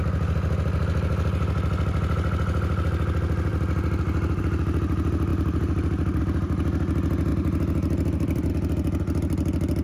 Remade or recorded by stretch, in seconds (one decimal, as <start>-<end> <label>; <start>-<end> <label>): 0.0-5.3 recorded; 5.3-6.2 remade; 6.2-7.3 recorded; 7.3-8.5 remade; 8.5-9.8 recorded